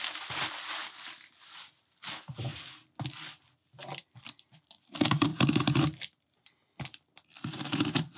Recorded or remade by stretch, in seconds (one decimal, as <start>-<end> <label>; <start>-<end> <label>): 0.0-0.8 remade; 0.8-1.7 recorded; 1.7-2.5 remade; 2.5-3.1 recorded; 3.1-8.2 remade